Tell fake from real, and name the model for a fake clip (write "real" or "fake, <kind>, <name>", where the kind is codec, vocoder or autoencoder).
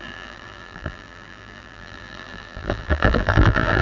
fake, vocoder, BigVGAN v2